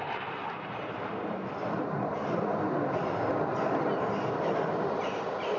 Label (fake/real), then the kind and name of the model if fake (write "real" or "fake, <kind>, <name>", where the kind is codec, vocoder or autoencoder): real